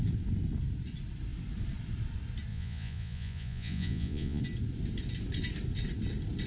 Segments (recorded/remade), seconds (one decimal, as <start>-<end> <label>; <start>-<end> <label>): 0.0-2.5 recorded; 2.5-4.4 remade; 4.4-6.5 recorded